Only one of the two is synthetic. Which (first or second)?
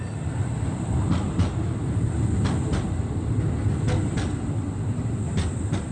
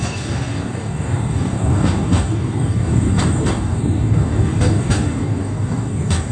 second